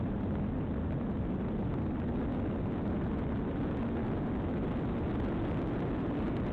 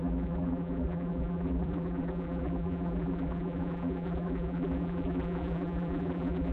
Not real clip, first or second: second